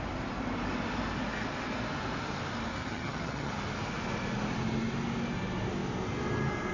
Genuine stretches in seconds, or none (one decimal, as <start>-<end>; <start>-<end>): 0.0-2.8; 3.5-6.7